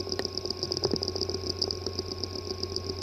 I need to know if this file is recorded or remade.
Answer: remade